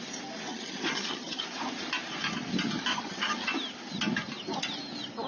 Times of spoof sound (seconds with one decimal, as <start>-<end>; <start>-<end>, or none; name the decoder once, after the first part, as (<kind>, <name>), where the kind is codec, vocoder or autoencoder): 0.5-1.4 (vocoder, HiFi-GAN); 2.9-3.5